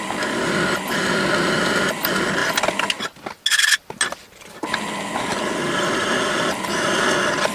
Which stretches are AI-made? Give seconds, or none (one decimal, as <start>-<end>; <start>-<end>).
none